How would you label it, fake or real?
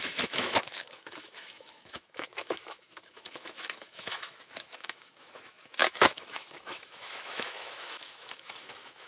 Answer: fake